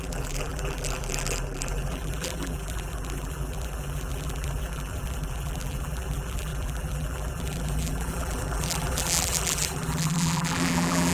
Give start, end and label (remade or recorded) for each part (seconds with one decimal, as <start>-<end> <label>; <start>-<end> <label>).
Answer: 0.0-11.1 remade